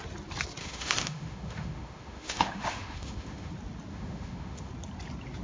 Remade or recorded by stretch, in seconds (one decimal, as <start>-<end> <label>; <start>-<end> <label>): 0.0-0.6 recorded; 0.6-3.5 remade; 3.5-3.9 recorded; 3.9-4.7 remade; 4.7-5.4 recorded